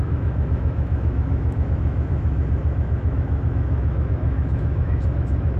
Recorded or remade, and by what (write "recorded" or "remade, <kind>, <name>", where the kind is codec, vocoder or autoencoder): remade, autoencoder, DAC-VAE